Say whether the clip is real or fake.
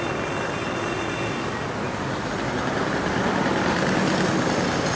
real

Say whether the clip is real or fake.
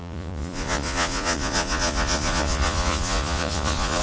fake